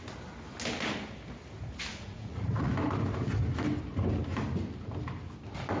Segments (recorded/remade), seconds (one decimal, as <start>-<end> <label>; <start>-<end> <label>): 0.0-1.9 recorded; 1.9-2.7 remade; 2.7-5.8 recorded